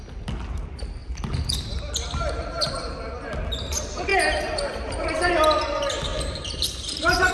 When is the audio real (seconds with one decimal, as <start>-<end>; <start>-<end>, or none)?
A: 0.0-4.1; 5.3-6.1

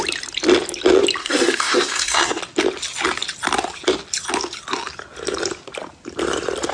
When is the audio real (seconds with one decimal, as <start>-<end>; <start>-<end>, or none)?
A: 0.0-1.2; 2.4-6.7

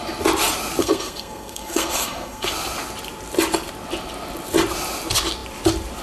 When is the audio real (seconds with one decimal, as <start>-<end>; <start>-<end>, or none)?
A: 0.0-0.8; 2.5-6.0

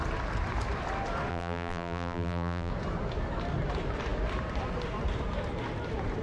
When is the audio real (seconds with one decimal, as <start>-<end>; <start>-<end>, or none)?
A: 0.0-1.3; 2.7-6.2

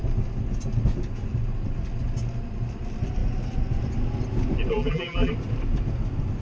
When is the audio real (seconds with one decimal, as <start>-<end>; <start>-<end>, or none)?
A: 0.0-4.7; 5.3-6.4